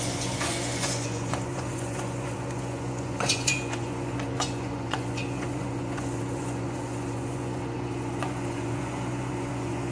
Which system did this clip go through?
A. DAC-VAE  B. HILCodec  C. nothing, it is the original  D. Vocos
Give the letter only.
D